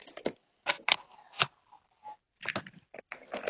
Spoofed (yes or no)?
no